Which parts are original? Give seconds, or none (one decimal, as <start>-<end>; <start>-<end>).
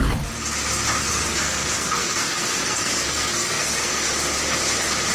0.0-1.0; 4.1-5.1